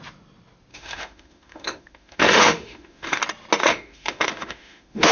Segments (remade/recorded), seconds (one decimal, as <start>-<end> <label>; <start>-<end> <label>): 0.0-0.7 recorded; 0.7-3.2 remade; 3.2-3.6 recorded; 3.6-5.1 remade